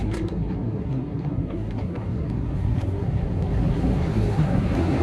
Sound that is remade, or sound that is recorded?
remade